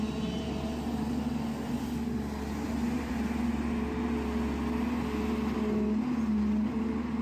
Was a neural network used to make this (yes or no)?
no